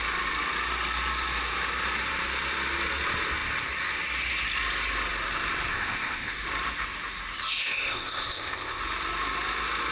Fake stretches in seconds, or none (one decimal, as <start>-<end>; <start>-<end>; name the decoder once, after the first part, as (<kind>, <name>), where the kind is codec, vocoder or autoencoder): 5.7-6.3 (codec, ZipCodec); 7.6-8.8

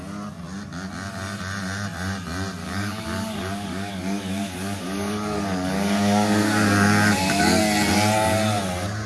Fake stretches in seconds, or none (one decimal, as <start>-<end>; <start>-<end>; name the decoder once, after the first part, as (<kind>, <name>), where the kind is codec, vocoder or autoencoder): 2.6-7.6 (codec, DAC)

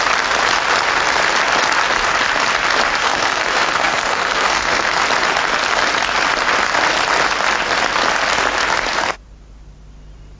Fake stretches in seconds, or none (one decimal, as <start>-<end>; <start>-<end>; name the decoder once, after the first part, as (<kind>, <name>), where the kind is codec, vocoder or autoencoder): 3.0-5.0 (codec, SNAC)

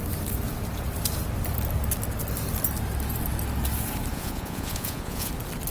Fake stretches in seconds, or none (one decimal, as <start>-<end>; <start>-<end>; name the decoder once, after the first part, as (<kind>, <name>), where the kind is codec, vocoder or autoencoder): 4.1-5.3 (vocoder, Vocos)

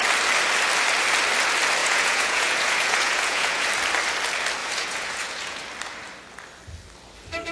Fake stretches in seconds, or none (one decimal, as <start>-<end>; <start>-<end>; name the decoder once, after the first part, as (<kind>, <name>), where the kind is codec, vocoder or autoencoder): 1.8-3.7 (vocoder, Vocos); 4.6-5.6

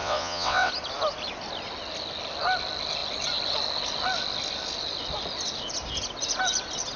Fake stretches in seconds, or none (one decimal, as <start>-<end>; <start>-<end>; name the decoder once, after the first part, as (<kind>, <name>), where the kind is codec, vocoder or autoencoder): 0.0-0.7 (vocoder, WaveNeXt)